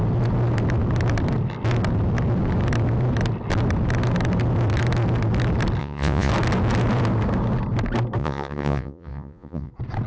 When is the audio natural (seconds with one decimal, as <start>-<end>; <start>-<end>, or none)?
0.0-5.8; 6.3-8.2; 9.7-10.1